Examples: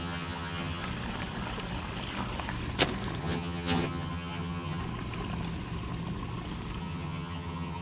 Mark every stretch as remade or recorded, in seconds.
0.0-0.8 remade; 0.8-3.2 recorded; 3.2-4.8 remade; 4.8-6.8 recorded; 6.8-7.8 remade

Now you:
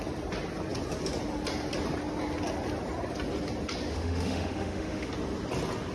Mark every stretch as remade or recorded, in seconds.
0.0-3.9 recorded; 3.9-5.1 remade; 5.1-5.9 recorded

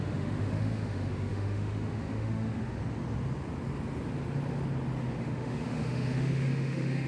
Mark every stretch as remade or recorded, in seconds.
0.0-2.8 remade; 2.8-5.2 recorded; 5.2-7.1 remade